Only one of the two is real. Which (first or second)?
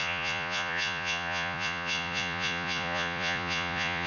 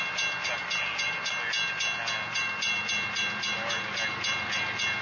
second